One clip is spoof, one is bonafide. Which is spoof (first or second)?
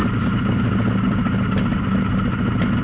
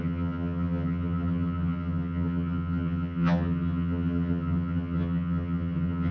second